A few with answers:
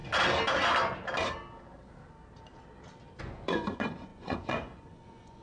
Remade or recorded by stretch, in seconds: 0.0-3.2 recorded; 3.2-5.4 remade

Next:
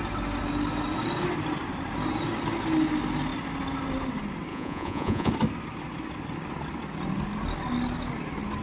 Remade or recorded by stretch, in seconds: 0.0-4.5 recorded; 4.5-5.3 remade; 5.3-8.6 recorded

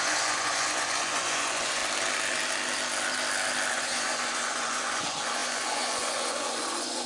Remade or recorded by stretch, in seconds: 0.0-1.8 remade; 1.8-3.7 recorded; 3.7-7.1 remade

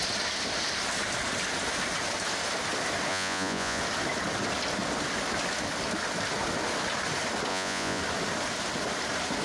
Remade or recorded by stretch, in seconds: 0.0-3.1 recorded; 3.1-3.8 remade; 3.8-7.5 recorded; 7.5-8.0 remade; 8.0-9.4 recorded